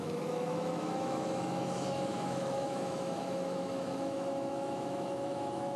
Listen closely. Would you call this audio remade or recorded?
remade